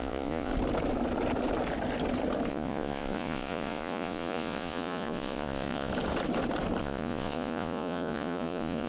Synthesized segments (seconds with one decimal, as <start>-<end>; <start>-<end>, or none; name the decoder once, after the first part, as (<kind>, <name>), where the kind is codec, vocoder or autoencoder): 0.0-0.5 (vocoder, Vocos); 2.5-5.9; 6.8-8.9